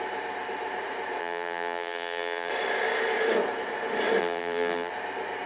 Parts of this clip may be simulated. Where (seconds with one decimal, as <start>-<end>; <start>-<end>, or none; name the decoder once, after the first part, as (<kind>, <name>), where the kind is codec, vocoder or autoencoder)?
1.2-2.5 (vocoder, BigVGAN v2); 4.2-4.9